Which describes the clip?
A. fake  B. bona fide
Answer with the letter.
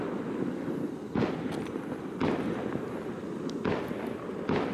B